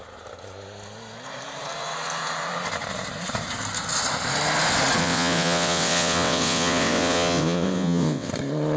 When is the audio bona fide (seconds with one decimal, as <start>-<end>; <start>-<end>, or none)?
0.0-5.0; 8.3-8.8